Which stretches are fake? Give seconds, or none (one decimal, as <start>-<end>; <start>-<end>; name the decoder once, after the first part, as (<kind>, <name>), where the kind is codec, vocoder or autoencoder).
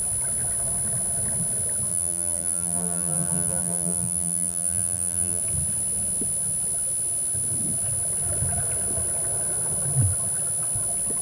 1.9-5.4 (vocoder, BigVGAN v2)